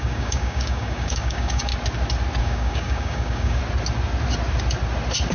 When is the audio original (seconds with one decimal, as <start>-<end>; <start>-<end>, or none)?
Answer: 1.7-2.4; 3.6-5.3